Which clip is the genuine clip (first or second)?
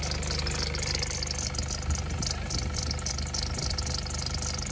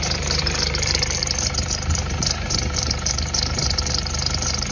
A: first